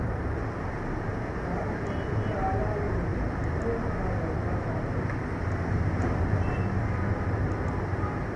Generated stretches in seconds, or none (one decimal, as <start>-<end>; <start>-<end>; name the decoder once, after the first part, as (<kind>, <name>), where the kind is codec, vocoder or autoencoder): none